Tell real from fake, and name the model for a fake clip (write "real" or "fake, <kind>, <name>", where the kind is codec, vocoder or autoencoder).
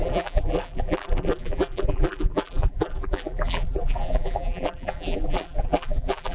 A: fake, vocoder, BigVGAN v2